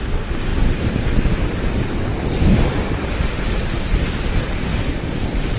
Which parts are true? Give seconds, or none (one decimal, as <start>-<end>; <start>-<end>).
0.0-5.6